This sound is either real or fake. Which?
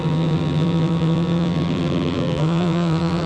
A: fake